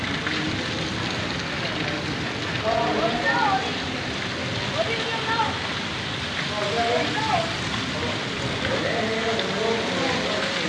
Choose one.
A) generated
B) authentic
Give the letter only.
B